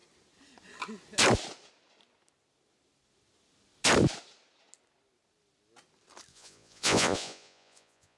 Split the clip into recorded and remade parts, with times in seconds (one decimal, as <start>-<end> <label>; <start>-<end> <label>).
0.0-6.3 recorded; 6.3-8.2 remade